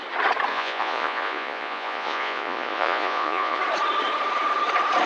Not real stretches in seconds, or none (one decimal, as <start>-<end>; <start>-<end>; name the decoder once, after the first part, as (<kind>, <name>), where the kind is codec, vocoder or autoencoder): 0.5-3.6 (vocoder, Vocos)